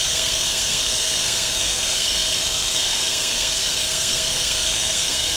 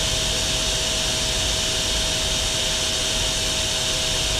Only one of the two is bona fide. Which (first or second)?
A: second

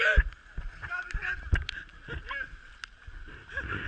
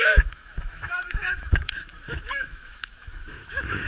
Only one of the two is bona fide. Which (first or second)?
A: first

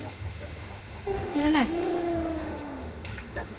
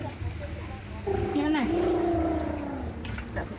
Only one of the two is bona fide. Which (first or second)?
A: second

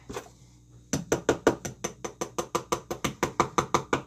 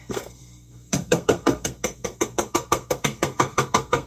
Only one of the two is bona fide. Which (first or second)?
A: first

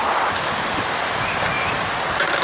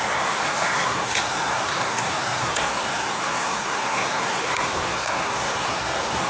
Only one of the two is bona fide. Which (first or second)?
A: first